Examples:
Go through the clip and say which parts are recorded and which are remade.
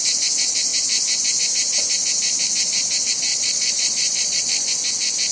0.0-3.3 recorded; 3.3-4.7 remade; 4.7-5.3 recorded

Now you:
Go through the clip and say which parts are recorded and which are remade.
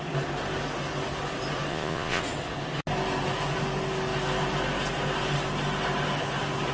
0.0-1.7 recorded; 1.7-2.2 remade; 2.2-6.7 recorded